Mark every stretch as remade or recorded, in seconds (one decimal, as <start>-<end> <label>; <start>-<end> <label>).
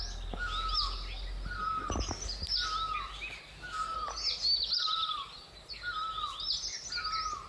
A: 0.0-7.5 recorded